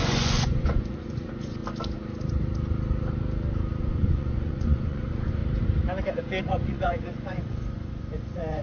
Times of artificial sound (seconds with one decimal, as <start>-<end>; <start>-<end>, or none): 0.0-1.6; 3.8-5.4; 6.4-8.6